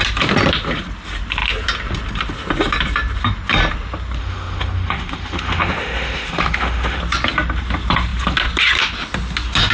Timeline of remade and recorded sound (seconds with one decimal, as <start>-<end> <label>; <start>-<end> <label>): 0.0-4.2 recorded; 4.2-7.0 remade; 7.0-9.7 recorded